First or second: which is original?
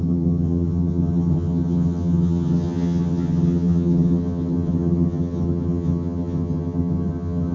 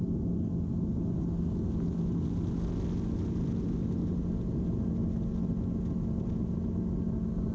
second